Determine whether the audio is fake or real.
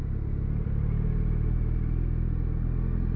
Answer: real